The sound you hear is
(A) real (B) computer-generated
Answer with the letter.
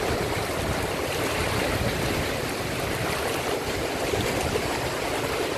B